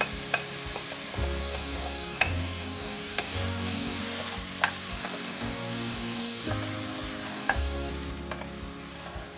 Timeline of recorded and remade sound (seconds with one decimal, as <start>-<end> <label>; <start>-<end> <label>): 0.0-1.4 recorded; 1.4-4.0 remade; 4.0-4.9 recorded; 4.9-6.5 remade; 6.5-7.3 recorded; 7.3-7.9 remade; 7.9-9.4 recorded